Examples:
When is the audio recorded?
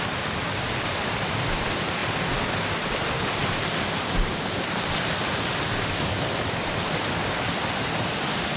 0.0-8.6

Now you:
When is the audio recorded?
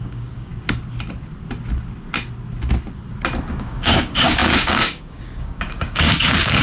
0.5-3.5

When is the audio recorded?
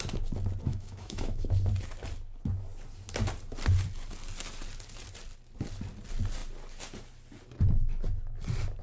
0.0-0.7; 1.5-8.8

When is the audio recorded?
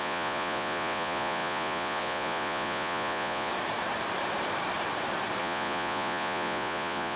3.5-5.4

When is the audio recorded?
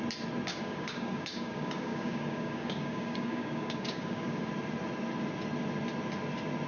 0.0-0.5; 4.5-6.7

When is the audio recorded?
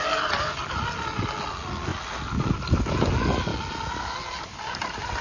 0.0-5.2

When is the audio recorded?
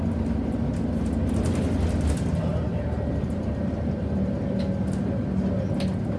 0.0-2.5; 3.9-6.2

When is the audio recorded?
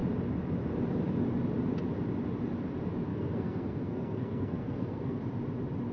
0.0-3.1; 5.2-5.9